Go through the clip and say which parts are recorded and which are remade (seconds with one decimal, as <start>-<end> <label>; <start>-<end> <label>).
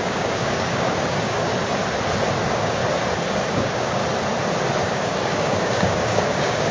0.0-1.5 remade; 1.5-2.4 recorded; 2.4-2.8 remade; 2.8-3.5 recorded; 3.5-4.0 remade; 4.0-4.8 recorded; 4.8-6.7 remade